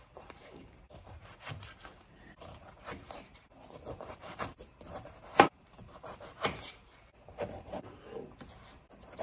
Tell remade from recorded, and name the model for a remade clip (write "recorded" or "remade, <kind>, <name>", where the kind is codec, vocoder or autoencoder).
remade, vocoder, BigVGAN v2